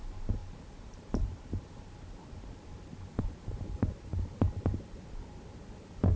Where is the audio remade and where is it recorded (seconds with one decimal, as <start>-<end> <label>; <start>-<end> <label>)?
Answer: 0.0-6.2 recorded